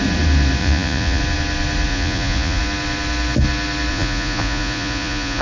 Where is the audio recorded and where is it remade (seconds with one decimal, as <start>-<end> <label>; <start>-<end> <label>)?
0.0-0.6 recorded; 0.6-1.2 remade; 1.2-1.9 recorded; 1.9-2.6 remade; 2.6-3.9 recorded; 3.9-5.4 remade